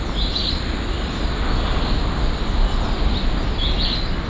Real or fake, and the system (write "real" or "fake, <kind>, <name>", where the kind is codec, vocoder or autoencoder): real